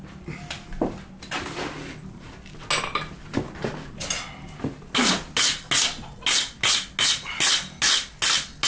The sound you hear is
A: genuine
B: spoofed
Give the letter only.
A